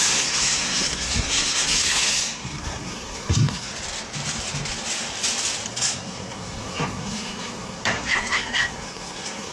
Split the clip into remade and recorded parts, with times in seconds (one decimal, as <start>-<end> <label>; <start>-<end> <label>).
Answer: 0.0-3.7 remade; 3.7-5.7 recorded; 5.7-9.5 remade